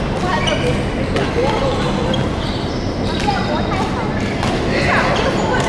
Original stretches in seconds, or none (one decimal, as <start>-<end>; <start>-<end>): 0.0-5.7